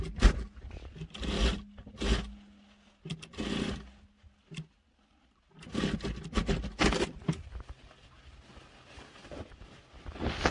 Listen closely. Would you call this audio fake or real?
real